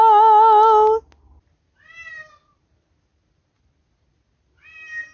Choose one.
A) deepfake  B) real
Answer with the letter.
B